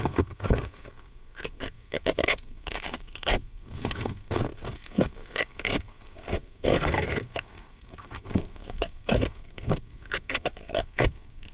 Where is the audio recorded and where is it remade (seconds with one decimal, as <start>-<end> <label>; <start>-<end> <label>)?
0.0-11.5 remade